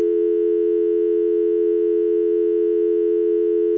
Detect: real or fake fake